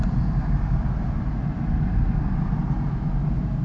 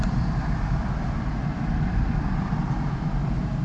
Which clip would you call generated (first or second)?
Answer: second